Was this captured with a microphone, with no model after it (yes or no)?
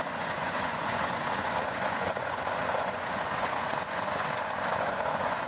no